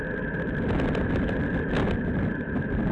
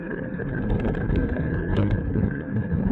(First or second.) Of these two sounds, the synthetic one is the second